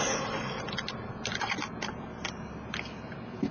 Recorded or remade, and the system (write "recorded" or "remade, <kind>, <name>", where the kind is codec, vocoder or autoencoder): recorded